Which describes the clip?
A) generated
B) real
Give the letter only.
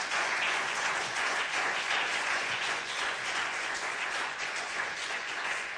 A